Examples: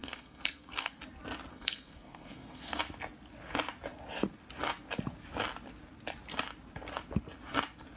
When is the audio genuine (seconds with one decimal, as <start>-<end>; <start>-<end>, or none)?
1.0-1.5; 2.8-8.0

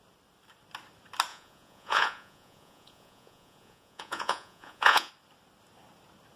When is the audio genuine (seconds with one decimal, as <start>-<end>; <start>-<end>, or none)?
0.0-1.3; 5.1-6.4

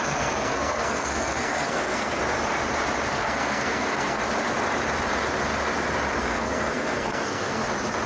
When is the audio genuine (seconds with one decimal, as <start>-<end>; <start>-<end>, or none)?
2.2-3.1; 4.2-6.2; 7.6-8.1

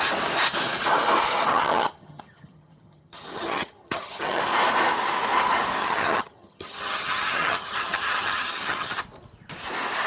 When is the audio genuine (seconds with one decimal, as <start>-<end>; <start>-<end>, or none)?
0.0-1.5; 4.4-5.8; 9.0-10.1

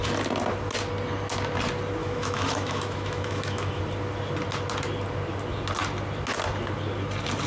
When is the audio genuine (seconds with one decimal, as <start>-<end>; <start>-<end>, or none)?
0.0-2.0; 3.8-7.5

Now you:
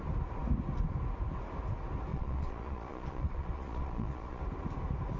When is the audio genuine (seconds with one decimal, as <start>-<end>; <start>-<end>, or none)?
0.0-2.1; 4.4-5.2

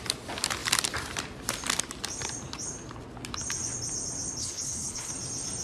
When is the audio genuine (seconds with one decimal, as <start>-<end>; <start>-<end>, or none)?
0.0-4.4; 5.1-5.6

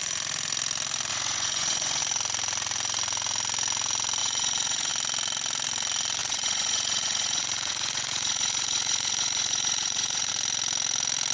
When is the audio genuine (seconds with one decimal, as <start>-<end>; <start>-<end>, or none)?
0.0-1.1; 2.0-4.2; 4.9-6.2; 10.3-11.3